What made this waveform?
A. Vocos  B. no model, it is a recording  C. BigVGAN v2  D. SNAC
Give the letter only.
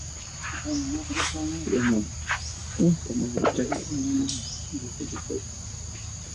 B